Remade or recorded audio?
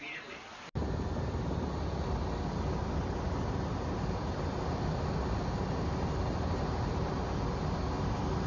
recorded